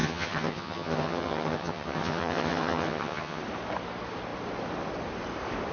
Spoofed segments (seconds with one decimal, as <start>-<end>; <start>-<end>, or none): 0.0-3.4